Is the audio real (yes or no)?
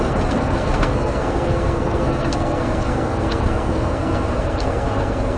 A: no